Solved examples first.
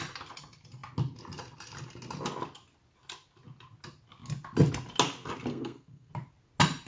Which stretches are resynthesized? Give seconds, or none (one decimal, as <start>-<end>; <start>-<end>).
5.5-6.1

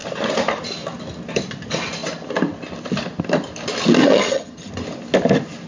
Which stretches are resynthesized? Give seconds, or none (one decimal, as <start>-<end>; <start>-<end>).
4.0-4.7

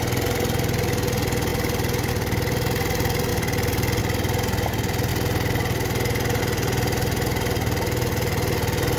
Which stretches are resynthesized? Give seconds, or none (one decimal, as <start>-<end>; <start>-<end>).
none

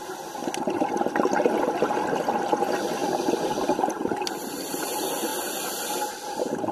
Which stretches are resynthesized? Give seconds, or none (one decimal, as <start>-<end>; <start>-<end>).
none

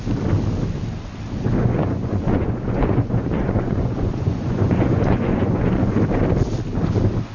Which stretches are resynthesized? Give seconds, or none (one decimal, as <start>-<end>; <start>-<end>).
1.6-6.0

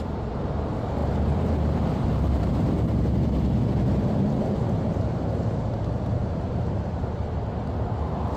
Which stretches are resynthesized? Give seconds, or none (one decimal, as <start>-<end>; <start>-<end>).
0.0-7.2

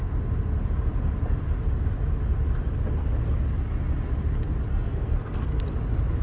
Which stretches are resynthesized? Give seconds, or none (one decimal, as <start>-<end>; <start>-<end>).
4.7-5.6

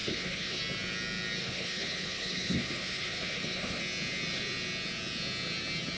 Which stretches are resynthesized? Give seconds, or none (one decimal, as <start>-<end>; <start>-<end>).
0.0-0.6; 1.4-3.8